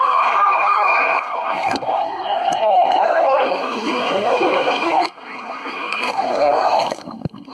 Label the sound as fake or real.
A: fake